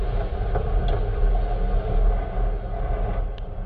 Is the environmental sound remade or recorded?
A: recorded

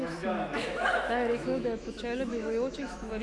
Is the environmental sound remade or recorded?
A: remade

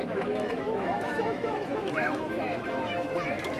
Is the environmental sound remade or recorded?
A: remade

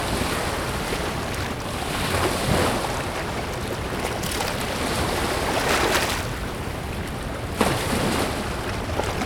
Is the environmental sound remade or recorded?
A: recorded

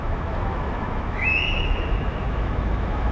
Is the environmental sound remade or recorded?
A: remade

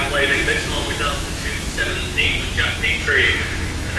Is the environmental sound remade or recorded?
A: remade